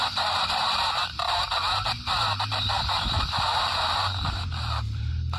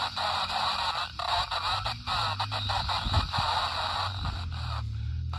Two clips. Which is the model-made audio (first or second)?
first